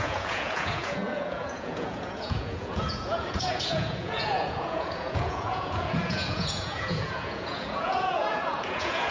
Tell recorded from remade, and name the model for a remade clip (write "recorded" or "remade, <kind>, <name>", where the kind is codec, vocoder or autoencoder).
remade, vocoder, Vocos